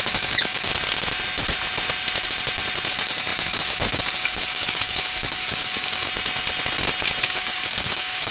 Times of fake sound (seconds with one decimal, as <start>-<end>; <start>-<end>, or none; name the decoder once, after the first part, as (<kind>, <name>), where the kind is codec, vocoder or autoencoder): 0.0-0.7 (codec, DAC); 2.9-6.1; 7.2-8.3